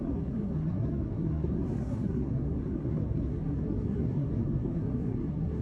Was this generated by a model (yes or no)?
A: yes